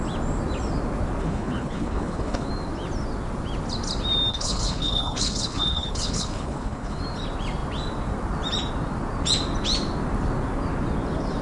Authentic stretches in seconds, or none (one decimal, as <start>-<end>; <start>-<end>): 0.0-1.2; 2.5-4.3; 7.0-11.4